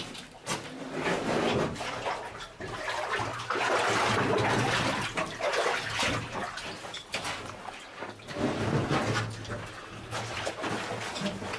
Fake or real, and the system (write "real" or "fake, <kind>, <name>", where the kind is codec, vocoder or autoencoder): real